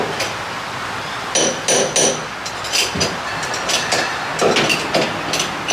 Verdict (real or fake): real